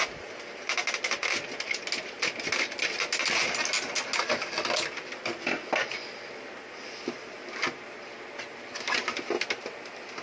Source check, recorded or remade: recorded